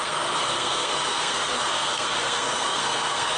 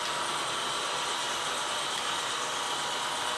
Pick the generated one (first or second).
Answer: first